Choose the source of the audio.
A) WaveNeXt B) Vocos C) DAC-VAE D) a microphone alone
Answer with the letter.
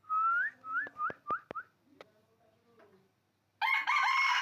D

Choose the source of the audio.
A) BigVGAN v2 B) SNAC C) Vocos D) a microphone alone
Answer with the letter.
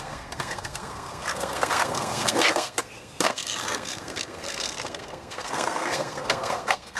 B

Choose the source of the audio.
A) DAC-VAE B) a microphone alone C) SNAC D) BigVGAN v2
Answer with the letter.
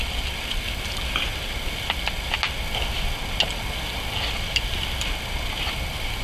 B